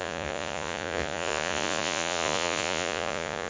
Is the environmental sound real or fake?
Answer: fake